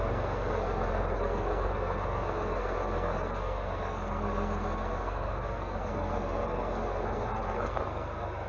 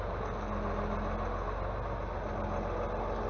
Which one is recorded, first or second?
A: second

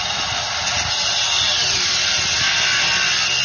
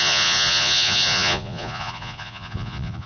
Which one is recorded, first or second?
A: first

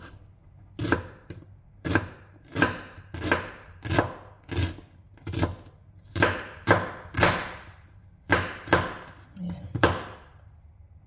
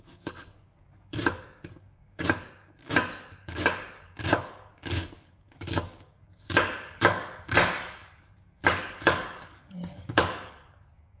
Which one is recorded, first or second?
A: first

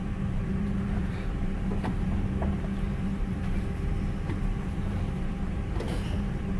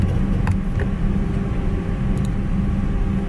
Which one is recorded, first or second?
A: second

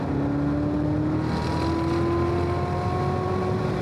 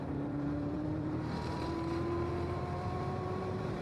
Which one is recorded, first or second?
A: first